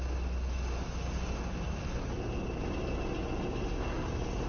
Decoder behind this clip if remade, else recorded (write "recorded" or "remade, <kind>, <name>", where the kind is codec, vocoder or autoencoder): recorded